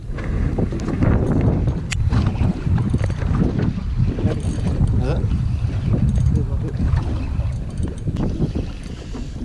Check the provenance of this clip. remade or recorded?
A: recorded